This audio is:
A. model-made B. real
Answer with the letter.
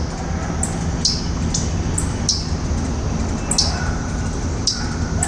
B